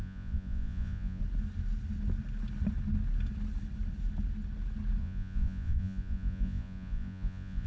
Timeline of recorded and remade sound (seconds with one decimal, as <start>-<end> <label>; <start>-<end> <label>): 0.0-1.2 remade; 1.2-5.0 recorded; 5.0-7.7 remade